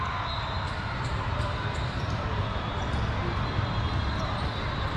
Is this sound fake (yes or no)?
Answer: no